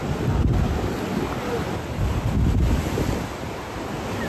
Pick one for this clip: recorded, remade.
recorded